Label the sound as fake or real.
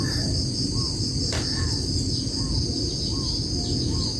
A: real